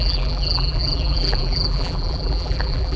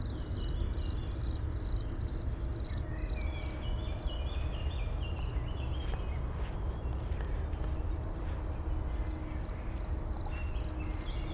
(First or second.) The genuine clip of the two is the second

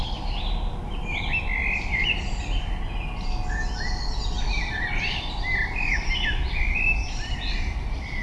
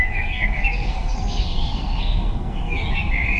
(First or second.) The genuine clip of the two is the first